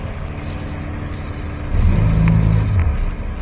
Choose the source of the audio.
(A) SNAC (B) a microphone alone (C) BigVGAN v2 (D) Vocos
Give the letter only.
B